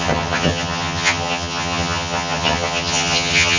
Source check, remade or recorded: remade